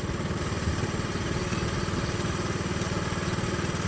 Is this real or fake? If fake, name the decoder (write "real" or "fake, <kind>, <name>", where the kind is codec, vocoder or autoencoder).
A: real